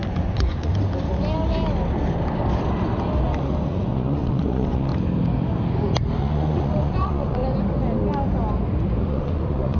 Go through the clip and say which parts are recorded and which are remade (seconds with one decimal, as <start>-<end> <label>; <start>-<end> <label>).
0.0-0.7 remade; 0.7-3.7 recorded; 3.7-4.9 remade; 4.9-6.2 recorded; 6.2-7.4 remade; 7.4-9.0 recorded; 9.0-9.8 remade